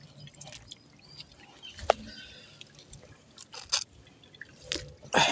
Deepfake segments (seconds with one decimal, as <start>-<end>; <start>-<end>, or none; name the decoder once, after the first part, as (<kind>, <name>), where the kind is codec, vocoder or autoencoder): none